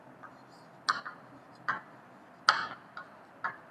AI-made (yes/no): no